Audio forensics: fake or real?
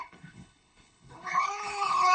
fake